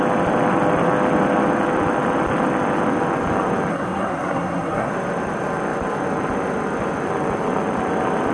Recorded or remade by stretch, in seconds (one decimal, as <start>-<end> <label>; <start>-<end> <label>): 0.0-3.7 recorded; 3.7-4.9 remade; 4.9-8.3 recorded